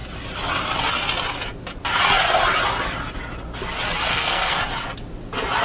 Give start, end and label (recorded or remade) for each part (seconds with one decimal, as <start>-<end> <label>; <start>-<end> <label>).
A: 0.0-4.1 recorded; 4.1-4.6 remade; 4.6-5.6 recorded